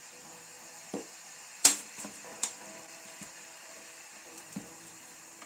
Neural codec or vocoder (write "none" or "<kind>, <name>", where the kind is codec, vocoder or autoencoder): vocoder, BigVGAN v2